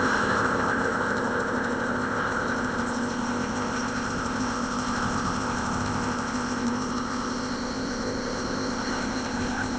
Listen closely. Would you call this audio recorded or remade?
remade